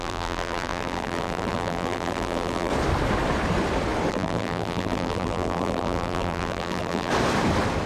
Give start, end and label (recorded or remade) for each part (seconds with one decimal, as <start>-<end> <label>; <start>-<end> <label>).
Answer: 0.0-2.7 remade; 2.7-4.1 recorded; 4.1-7.1 remade; 7.1-7.9 recorded